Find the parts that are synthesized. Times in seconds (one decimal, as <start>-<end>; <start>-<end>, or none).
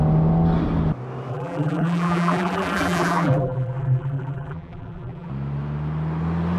1.3-5.3